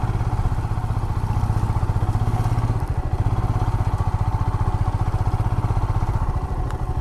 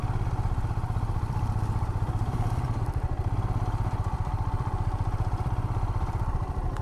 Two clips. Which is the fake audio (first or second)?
second